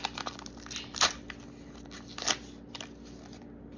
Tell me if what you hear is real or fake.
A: real